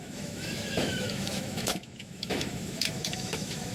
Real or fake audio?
fake